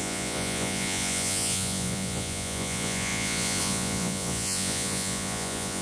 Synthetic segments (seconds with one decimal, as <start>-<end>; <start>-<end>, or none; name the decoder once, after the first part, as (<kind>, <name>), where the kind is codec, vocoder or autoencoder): 0.0-5.8 (vocoder, Vocos)